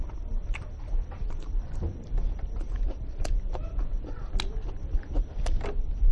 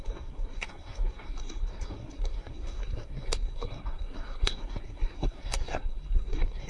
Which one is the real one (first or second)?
first